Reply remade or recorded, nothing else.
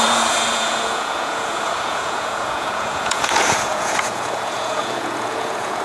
remade